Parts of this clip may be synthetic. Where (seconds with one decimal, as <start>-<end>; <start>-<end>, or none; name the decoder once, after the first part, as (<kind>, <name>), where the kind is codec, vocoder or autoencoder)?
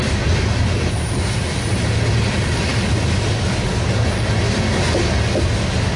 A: none